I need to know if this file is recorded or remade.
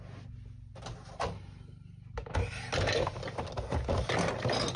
recorded